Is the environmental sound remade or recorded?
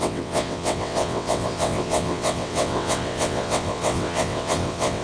remade